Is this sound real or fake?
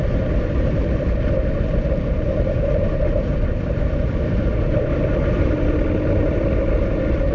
real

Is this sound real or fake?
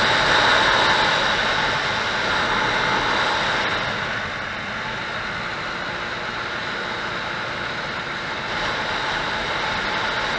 real